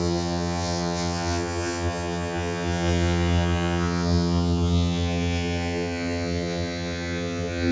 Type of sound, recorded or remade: remade